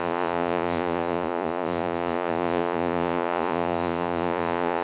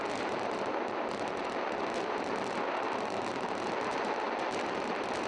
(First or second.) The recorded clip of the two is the second